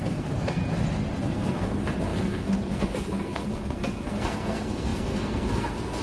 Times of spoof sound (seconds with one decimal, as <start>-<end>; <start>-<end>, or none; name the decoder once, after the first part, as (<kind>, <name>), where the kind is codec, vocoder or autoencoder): 0.0-0.6 (codec, SNAC); 1.2-6.0